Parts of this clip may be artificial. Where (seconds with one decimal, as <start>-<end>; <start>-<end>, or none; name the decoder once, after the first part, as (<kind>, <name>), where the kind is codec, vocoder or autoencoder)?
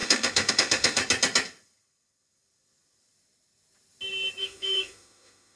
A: 0.0-1.0 (autoencoder, DAC-VAE); 4.4-5.6